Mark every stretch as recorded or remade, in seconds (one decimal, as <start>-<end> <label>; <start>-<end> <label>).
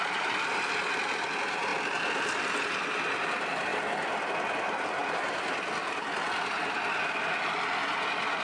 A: 0.0-8.4 recorded